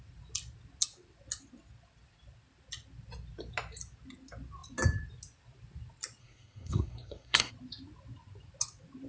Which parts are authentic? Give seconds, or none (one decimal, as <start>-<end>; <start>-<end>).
0.0-6.2; 7.5-9.1